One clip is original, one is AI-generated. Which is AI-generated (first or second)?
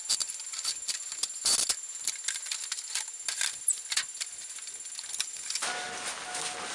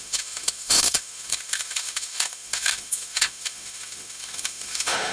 second